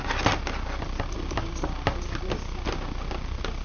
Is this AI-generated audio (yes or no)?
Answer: no